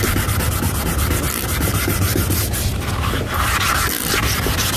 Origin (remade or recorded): recorded